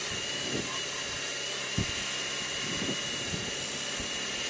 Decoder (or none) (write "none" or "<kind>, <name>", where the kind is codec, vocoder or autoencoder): none